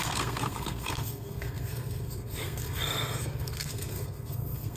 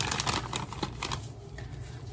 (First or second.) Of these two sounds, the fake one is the first